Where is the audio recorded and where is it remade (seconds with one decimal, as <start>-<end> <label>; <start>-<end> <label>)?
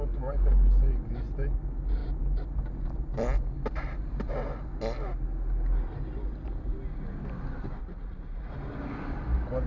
0.0-7.8 recorded; 7.8-8.5 remade; 8.5-9.7 recorded